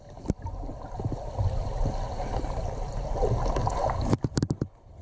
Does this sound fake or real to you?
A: real